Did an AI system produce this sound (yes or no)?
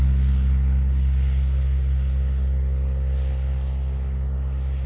no